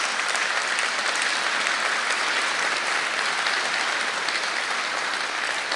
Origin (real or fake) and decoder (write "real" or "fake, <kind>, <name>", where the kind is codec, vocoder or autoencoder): real